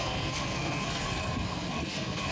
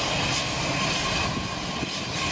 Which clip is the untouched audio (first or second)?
second